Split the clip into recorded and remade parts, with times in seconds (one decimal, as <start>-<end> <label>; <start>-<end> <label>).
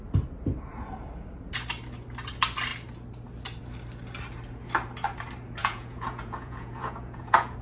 0.0-5.6 recorded; 5.6-7.6 remade